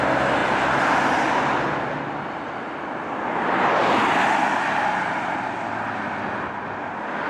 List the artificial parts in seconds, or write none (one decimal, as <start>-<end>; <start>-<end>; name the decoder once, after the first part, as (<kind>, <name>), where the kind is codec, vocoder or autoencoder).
none